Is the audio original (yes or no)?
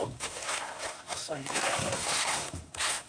no